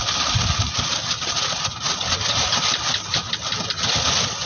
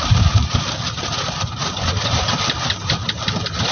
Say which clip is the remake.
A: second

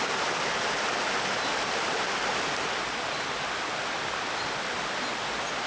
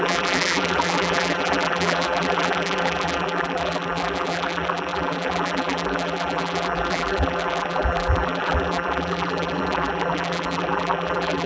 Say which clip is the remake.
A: second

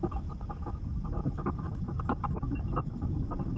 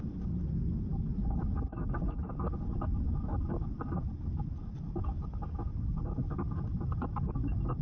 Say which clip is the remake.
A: first